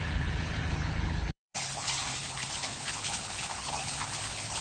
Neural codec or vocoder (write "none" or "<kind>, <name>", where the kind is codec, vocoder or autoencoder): codec, HILCodec